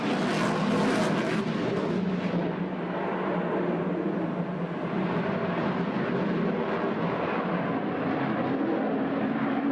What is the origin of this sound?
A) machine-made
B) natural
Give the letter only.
B